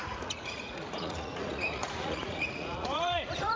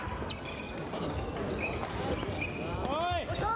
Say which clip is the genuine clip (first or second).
second